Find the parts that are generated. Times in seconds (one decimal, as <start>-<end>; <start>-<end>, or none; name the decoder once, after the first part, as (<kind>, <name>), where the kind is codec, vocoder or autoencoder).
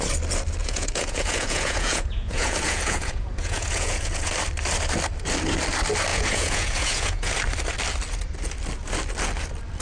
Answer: 0.6-4.3 (vocoder, Vocos); 6.1-7.3